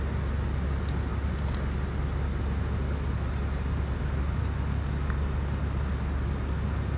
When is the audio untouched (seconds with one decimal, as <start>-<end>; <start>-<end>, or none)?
0.0-7.0